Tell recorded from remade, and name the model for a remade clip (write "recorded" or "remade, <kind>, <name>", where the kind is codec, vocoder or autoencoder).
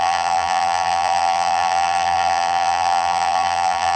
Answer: remade, vocoder, BigVGAN v2